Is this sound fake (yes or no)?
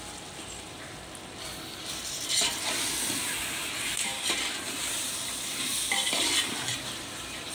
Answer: no